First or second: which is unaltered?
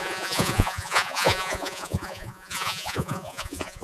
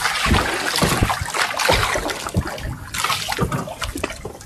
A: second